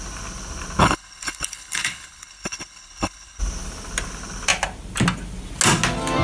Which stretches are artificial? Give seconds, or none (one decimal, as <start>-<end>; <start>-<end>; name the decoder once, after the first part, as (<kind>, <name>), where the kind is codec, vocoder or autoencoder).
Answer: 0.8-3.4 (codec, HILCodec)